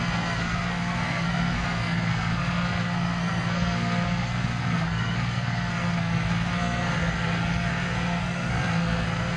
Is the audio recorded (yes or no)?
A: no